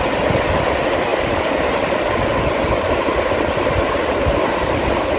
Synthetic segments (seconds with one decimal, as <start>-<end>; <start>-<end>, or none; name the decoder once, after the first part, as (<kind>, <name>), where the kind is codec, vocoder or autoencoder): none